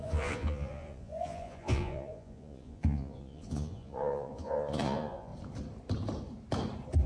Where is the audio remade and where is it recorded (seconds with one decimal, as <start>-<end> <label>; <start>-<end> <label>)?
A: 0.0-5.3 remade; 5.3-7.1 recorded